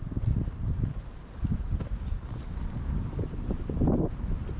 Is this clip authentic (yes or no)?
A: yes